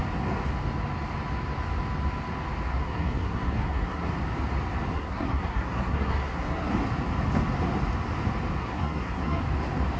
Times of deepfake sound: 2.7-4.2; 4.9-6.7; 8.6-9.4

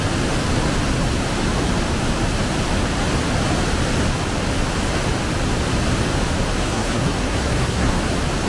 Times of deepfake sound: 6.6-8.0

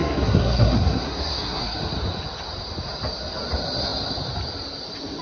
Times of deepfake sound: 0.0-1.8